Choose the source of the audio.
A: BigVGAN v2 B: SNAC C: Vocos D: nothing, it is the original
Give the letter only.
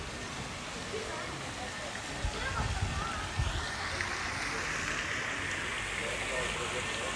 D